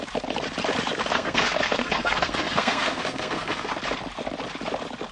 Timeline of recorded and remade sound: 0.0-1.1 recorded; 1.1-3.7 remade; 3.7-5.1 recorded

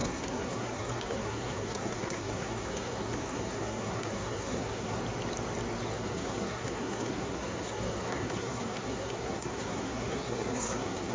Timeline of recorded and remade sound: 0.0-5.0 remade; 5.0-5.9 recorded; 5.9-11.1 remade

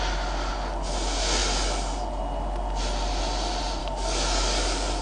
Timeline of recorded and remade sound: 0.0-3.8 recorded; 3.8-5.0 remade

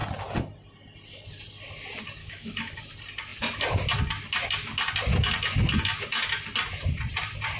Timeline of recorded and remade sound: 0.0-2.2 recorded; 2.2-2.8 remade; 2.8-7.6 recorded

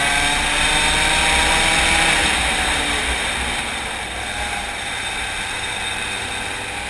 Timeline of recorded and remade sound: 0.0-2.2 recorded; 2.2-6.3 remade; 6.3-6.9 recorded